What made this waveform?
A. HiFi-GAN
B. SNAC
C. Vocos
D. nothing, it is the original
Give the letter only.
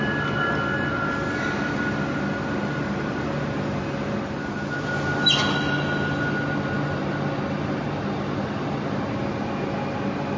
D